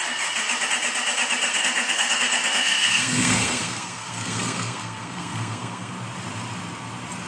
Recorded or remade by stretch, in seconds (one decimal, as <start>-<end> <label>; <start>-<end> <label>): 0.0-1.5 recorded; 1.5-5.9 remade; 5.9-7.3 recorded